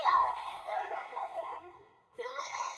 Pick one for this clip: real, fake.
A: fake